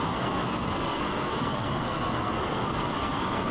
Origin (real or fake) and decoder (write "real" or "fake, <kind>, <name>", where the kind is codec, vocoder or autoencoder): fake, codec, SNAC